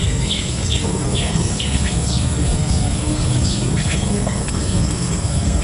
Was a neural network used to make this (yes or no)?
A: yes